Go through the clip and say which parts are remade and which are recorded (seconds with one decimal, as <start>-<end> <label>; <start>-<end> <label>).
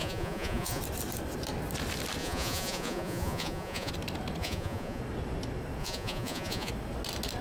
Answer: 0.0-0.8 remade; 0.8-2.2 recorded; 2.2-3.9 remade; 3.9-4.4 recorded; 4.4-5.0 remade; 5.0-5.8 recorded; 5.8-6.7 remade; 6.7-7.4 recorded